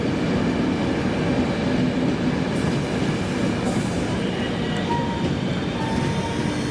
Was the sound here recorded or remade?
recorded